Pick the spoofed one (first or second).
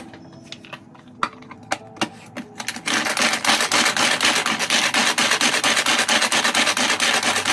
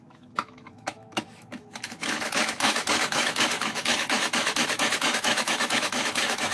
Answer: second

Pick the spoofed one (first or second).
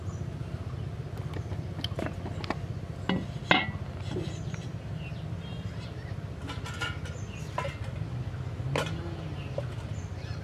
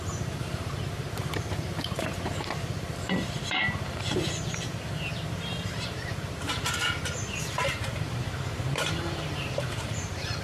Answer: second